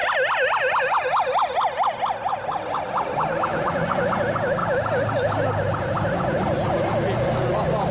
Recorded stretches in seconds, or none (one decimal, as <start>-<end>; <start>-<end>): 0.0-3.5; 4.1-7.9